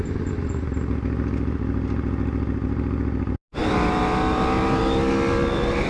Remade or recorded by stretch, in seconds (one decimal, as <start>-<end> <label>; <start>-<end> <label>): 0.0-5.9 recorded